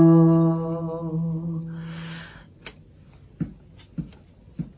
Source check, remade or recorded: recorded